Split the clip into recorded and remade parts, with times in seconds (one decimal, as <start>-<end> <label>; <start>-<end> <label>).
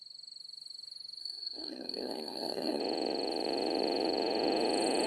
0.0-1.2 recorded; 1.2-2.8 remade; 2.8-5.1 recorded